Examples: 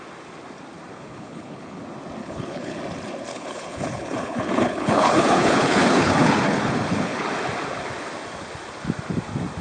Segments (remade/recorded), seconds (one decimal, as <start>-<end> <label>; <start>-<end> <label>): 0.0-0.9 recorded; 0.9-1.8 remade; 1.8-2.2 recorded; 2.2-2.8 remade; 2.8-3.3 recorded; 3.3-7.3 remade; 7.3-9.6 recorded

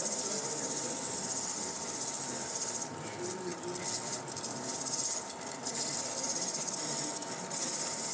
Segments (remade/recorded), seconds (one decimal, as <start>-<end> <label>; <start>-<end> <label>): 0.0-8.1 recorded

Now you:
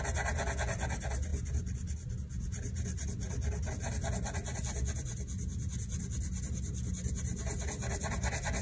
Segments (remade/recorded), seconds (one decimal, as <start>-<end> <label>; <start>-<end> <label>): 0.0-8.6 recorded